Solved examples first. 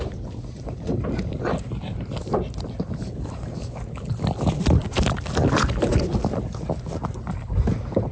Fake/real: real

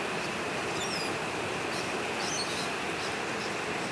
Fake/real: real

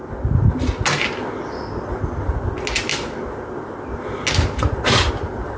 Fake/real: real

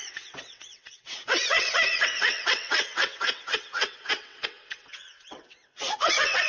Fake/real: fake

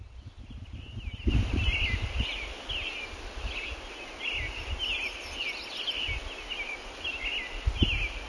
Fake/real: real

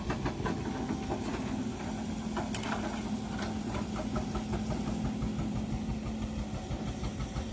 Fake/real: real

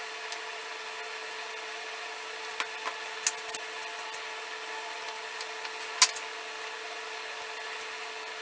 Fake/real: real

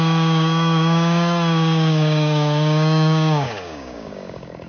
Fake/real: fake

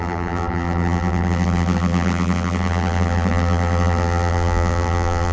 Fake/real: fake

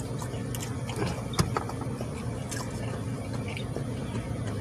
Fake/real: real